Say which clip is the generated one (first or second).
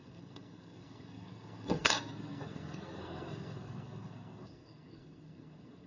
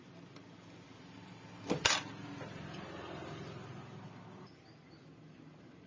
first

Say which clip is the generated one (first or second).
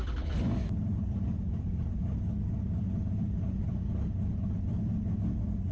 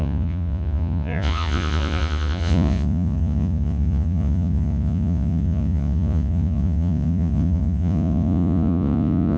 second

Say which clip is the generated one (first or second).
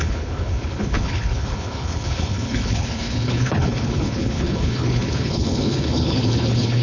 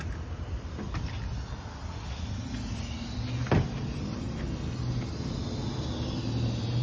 first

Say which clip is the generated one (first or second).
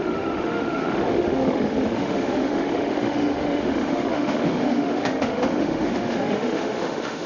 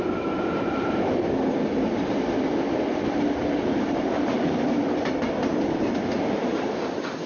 first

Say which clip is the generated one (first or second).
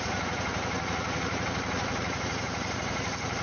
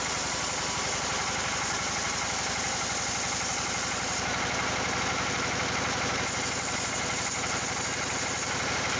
first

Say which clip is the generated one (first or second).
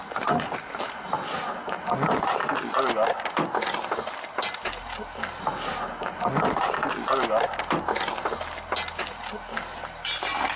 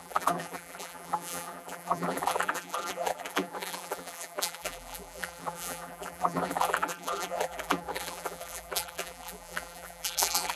second